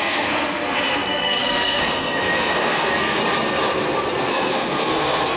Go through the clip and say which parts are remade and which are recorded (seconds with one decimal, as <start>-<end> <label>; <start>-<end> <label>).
0.0-3.2 remade; 3.2-4.3 recorded; 4.3-5.4 remade